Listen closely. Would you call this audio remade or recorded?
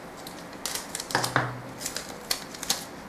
recorded